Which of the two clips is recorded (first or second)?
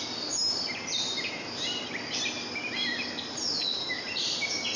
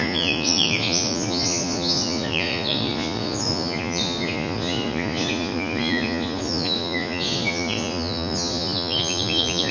first